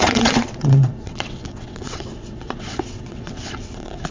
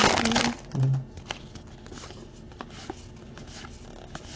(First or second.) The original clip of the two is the second